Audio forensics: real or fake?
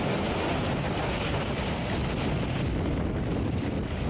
real